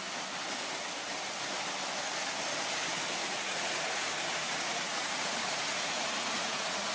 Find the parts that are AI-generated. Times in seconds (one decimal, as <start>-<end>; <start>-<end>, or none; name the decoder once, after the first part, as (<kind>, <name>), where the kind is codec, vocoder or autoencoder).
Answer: 3.2-6.9 (vocoder, Vocos)